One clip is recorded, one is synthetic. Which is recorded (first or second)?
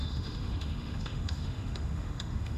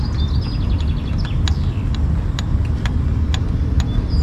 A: second